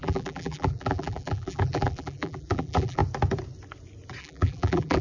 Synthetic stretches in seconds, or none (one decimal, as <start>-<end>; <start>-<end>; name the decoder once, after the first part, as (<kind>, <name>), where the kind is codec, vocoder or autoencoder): 0.0-3.0 (vocoder, BigVGAN v2); 4.2-5.0